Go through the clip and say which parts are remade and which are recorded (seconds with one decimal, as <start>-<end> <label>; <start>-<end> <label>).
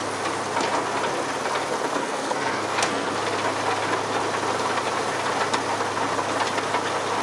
0.0-2.0 recorded; 2.0-3.1 remade; 3.1-7.2 recorded